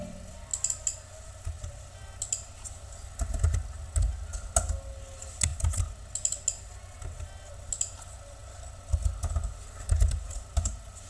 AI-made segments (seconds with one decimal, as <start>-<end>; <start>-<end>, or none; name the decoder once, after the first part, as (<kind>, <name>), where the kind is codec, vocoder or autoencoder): none